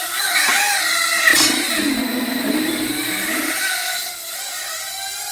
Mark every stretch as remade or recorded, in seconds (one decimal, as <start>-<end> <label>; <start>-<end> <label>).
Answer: 0.0-1.3 recorded; 1.3-2.0 remade; 2.0-5.3 recorded

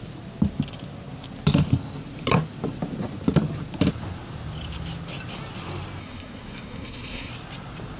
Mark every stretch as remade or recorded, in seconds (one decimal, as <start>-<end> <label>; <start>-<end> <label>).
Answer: 0.0-6.0 recorded; 6.0-7.3 remade; 7.3-8.0 recorded

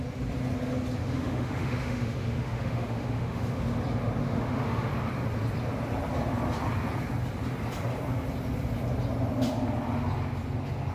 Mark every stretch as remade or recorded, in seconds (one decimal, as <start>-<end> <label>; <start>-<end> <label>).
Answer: 0.0-1.0 recorded; 1.0-3.6 remade; 3.6-4.2 recorded; 4.2-4.9 remade; 4.9-10.9 recorded

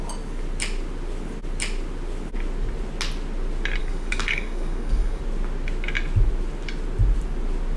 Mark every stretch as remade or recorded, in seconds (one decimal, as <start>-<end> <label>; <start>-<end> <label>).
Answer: 0.0-3.8 recorded; 3.8-5.2 remade; 5.2-7.8 recorded

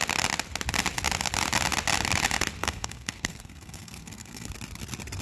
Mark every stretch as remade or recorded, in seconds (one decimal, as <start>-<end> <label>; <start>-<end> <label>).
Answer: 0.0-2.6 recorded; 2.6-4.5 remade; 4.5-5.2 recorded

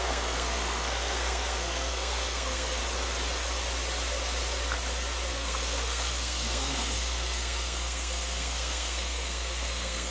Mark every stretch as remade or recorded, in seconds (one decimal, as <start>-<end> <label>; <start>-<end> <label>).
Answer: 0.0-2.8 remade; 2.8-5.3 recorded; 5.3-10.1 remade

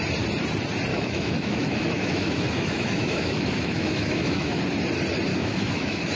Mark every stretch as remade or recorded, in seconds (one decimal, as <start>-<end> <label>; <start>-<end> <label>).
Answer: 0.0-0.9 recorded; 0.9-4.6 remade; 4.6-5.3 recorded; 5.3-6.2 remade